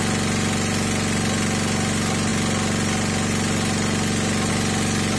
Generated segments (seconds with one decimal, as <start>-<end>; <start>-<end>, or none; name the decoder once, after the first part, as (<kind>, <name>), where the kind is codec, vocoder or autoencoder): none